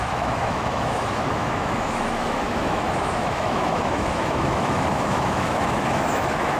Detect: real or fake fake